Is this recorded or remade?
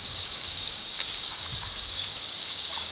remade